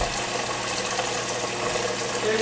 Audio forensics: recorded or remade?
recorded